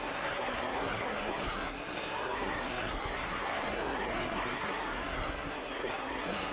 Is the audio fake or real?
fake